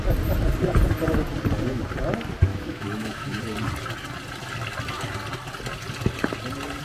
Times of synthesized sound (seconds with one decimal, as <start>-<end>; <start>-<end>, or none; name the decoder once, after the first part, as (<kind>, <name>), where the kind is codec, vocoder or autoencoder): 2.5-3.4 (autoencoder, DAC-VAE)